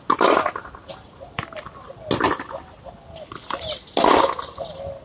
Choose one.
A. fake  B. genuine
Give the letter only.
B